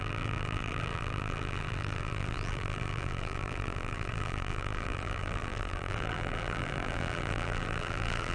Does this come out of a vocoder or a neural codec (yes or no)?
yes